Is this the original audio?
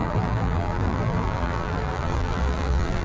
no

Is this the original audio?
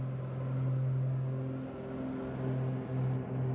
yes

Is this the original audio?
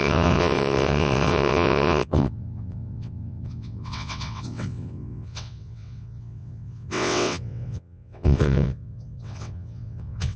no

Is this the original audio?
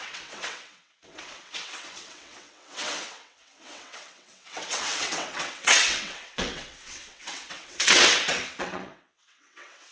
no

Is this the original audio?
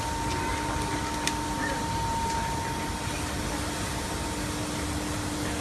yes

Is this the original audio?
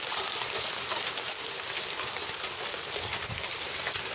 yes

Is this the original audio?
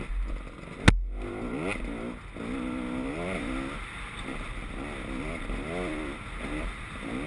yes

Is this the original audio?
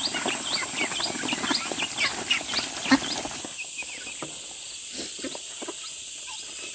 yes